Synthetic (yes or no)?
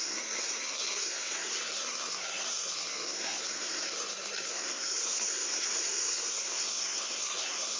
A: yes